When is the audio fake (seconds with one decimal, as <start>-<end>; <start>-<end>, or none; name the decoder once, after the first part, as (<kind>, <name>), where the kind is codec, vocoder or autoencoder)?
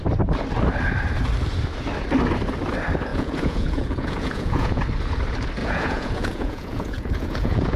3.1-4.8 (vocoder, Vocos); 5.6-7.8